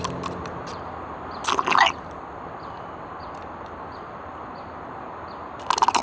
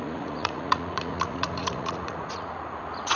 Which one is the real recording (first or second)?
first